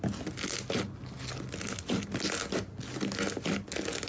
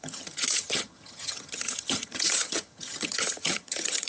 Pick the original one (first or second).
first